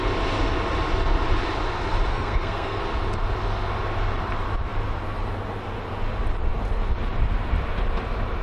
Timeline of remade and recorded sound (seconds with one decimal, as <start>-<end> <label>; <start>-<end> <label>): 0.0-2.1 recorded; 2.1-2.8 remade; 2.8-8.4 recorded

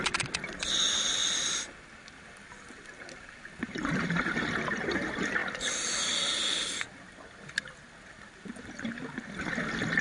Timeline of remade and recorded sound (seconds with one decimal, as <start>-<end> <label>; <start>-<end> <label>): 0.0-10.0 recorded

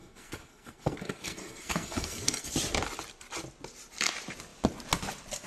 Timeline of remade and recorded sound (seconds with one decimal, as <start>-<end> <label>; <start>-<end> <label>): 0.0-2.5 remade; 2.5-5.5 recorded

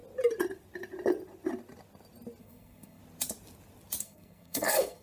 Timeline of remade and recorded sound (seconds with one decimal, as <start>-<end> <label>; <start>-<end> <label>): 0.0-2.4 recorded; 2.4-3.0 remade; 3.0-4.0 recorded; 4.0-5.0 remade